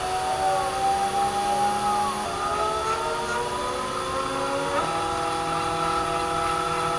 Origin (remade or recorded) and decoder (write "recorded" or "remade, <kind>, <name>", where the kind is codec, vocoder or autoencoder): recorded